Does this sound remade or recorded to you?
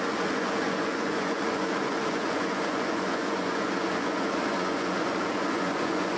remade